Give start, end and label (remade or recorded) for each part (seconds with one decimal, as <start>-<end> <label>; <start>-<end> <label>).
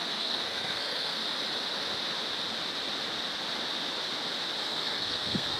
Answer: 0.0-1.2 remade; 1.2-4.6 recorded; 4.6-5.6 remade